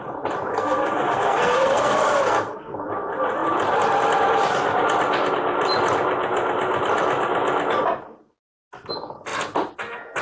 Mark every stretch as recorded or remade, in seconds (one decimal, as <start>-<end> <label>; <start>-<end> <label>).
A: 0.0-0.5 recorded; 0.5-2.8 remade; 2.8-10.2 recorded